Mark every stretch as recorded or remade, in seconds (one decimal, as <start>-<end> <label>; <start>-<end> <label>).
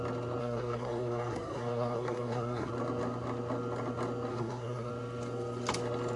0.0-0.4 recorded; 0.4-2.7 remade; 2.7-4.3 recorded; 4.3-4.9 remade; 4.9-6.2 recorded